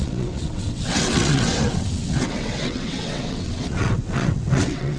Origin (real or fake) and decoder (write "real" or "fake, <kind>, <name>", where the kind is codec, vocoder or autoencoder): fake, vocoder, WaveNeXt